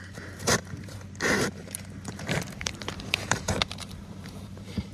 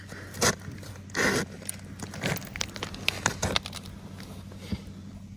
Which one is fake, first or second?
first